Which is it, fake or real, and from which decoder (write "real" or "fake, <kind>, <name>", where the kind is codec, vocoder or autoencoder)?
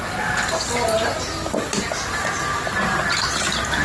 real